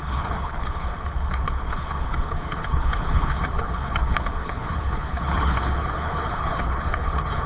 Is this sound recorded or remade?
remade